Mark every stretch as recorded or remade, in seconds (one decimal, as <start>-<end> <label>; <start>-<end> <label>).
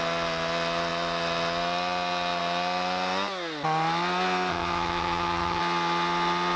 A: 0.0-4.5 recorded; 4.5-5.6 remade; 5.6-6.6 recorded